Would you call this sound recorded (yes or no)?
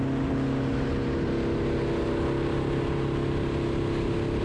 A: yes